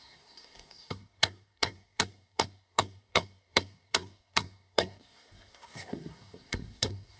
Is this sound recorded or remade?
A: remade